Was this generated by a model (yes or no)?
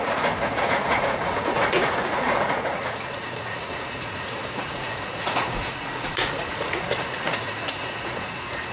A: yes